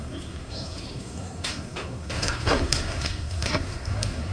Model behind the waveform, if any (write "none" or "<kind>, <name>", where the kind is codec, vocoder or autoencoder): codec, SNAC